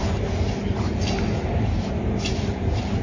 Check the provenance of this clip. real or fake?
fake